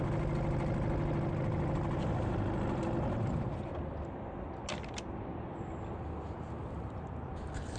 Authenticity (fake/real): real